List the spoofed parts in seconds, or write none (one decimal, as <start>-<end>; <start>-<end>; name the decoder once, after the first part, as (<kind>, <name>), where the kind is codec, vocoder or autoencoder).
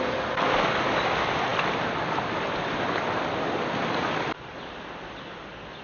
none